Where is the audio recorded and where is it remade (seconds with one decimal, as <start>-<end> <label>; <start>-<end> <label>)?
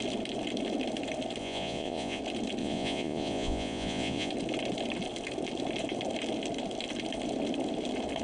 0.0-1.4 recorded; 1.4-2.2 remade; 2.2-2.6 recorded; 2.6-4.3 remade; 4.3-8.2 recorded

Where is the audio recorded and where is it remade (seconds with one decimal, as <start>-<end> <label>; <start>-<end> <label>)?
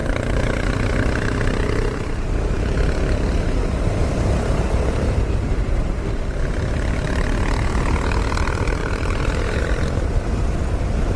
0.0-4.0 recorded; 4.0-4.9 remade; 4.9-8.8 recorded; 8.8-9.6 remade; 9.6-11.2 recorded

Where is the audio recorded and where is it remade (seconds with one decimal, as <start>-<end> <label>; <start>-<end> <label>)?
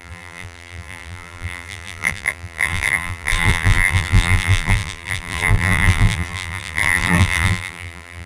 0.0-8.3 remade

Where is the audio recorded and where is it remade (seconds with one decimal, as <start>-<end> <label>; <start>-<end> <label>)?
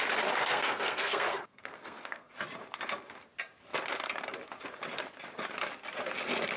0.0-0.4 recorded; 0.4-2.3 remade; 2.3-6.6 recorded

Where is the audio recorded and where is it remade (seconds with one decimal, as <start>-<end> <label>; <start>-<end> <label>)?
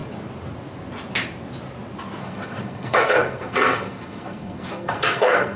0.0-2.2 recorded; 2.2-5.6 remade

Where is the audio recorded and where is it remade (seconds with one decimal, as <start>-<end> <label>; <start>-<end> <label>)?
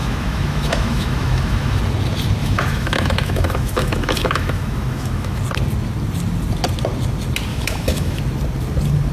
0.0-1.8 remade; 1.8-2.4 recorded; 2.4-5.4 remade; 5.4-7.5 recorded; 7.5-8.2 remade; 8.2-9.1 recorded